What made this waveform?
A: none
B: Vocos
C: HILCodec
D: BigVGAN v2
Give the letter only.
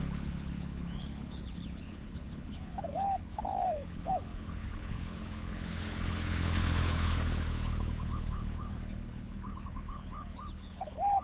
C